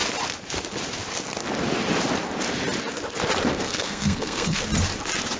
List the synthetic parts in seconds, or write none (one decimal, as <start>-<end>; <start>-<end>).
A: 3.5-4.6